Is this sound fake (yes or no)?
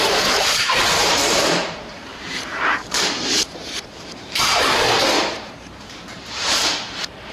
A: yes